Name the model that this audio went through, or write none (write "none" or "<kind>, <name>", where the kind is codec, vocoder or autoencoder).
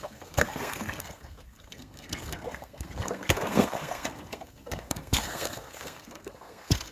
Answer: codec, SNAC